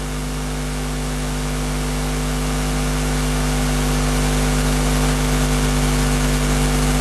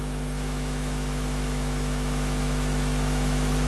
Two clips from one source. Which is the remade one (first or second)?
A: second